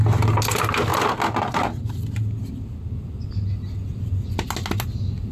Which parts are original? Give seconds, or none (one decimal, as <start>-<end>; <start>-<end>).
0.0-5.3